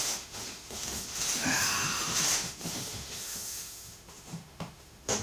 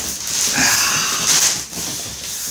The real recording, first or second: second